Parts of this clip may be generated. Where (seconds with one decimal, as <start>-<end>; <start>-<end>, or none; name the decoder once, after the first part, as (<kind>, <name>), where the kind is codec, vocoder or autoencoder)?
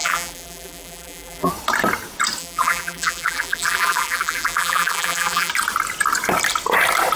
0.0-1.5 (vocoder, BigVGAN v2); 2.4-5.5